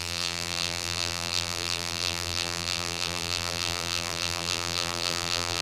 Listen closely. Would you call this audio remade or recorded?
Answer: remade